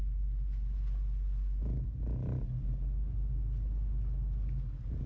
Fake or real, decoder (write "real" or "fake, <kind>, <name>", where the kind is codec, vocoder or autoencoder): real